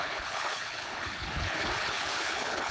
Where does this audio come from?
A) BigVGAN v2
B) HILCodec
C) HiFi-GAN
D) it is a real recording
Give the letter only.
B